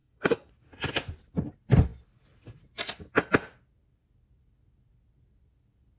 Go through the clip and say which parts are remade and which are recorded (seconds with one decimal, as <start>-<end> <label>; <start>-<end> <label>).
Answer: 0.0-0.5 remade; 0.5-6.0 recorded